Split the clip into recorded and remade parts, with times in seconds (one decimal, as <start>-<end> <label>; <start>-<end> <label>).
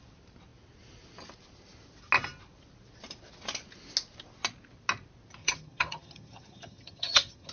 0.0-5.4 recorded; 5.4-7.5 remade